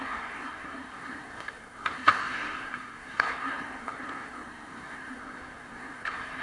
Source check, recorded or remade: remade